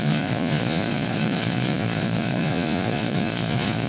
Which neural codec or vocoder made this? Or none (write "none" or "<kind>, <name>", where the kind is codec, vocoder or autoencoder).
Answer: vocoder, Vocos